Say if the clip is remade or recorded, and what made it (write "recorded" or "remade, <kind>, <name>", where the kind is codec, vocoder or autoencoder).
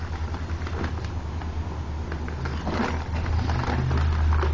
recorded